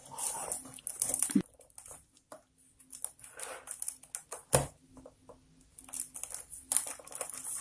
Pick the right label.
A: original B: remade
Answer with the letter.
A